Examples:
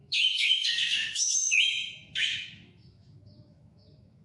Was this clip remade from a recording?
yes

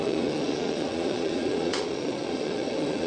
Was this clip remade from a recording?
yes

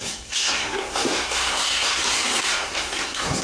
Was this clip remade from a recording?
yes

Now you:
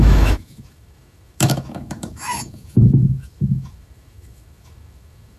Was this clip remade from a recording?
yes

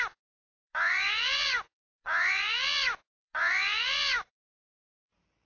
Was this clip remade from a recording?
yes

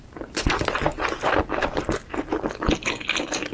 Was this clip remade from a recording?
no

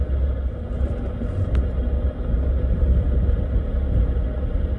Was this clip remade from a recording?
no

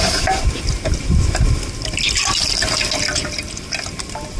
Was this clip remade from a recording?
no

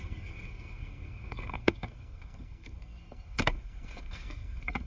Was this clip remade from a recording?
yes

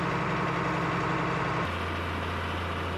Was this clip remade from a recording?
no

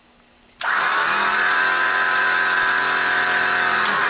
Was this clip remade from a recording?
no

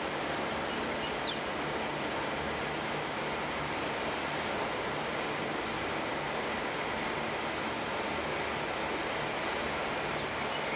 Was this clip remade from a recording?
no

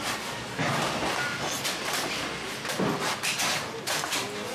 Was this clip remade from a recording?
no